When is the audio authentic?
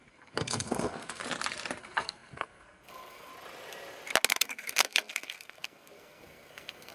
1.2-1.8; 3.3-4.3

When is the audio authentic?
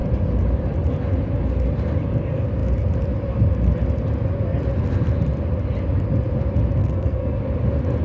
0.0-6.8; 7.4-8.0